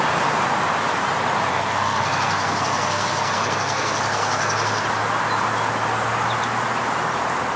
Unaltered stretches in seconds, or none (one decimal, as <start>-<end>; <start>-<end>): 0.0-1.5; 4.8-7.6